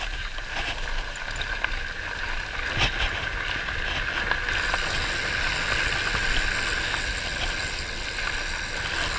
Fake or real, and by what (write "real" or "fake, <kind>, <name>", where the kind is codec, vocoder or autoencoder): real